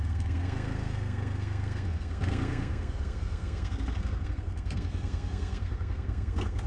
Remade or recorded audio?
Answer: remade